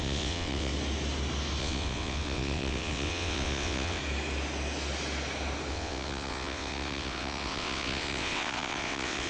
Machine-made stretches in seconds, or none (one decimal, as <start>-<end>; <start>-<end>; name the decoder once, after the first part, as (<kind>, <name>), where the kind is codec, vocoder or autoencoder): 0.0-0.7 (vocoder, WaveNeXt); 1.6-4.0; 5.7-9.3